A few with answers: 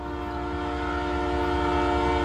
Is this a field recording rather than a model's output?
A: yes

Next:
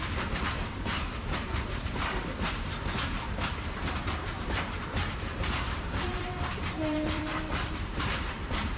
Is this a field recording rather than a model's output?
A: no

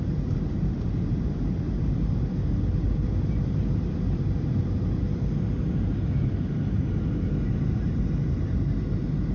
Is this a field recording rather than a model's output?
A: no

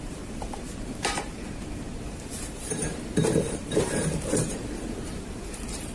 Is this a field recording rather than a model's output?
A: no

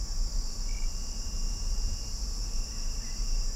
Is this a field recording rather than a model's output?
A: no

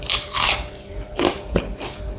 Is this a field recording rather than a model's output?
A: no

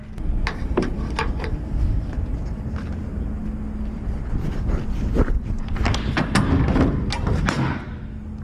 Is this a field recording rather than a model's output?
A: yes